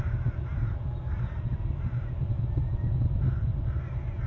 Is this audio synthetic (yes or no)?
no